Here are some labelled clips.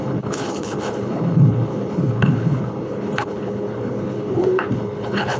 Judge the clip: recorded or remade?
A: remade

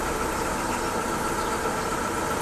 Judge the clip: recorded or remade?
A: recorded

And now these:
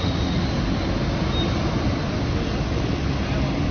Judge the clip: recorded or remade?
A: recorded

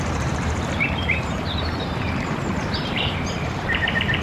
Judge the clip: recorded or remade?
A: remade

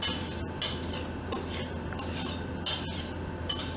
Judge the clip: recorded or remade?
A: recorded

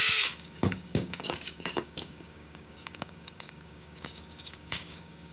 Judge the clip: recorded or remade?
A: remade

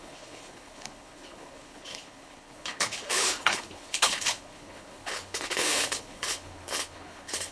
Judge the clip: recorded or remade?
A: remade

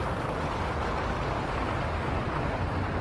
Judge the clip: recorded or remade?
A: recorded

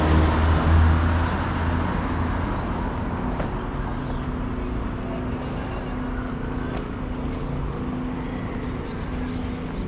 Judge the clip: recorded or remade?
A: recorded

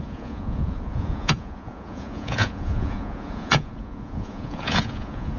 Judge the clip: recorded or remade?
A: remade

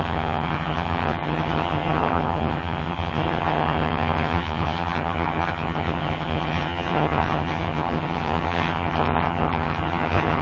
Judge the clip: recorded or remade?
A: remade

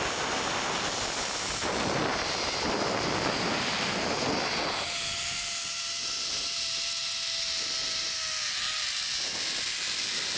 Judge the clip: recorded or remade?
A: recorded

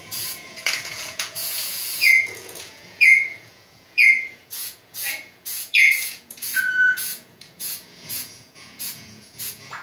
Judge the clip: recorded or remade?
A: remade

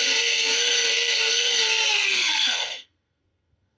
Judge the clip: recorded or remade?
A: remade